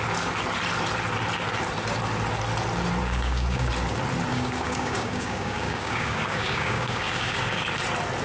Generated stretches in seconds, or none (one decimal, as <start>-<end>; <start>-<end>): 3.0-3.7; 4.3-7.5